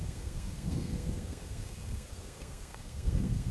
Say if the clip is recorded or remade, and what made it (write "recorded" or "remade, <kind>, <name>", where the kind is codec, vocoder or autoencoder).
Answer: remade, codec, SNAC